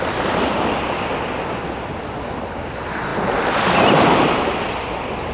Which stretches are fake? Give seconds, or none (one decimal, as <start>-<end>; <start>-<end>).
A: none